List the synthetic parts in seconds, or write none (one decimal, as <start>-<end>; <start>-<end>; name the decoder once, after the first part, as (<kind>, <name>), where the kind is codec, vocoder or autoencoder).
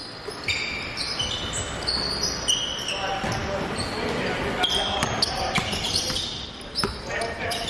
none